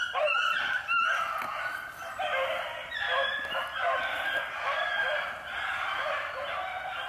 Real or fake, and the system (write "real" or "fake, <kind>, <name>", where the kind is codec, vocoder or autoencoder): real